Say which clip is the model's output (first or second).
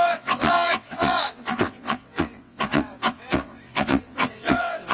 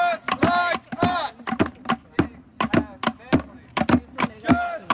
first